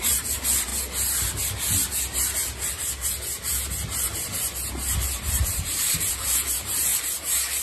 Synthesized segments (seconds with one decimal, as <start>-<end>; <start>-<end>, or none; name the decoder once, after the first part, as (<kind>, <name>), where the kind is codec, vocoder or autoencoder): 0.0-0.7 (vocoder, BigVGAN v2); 5.3-7.6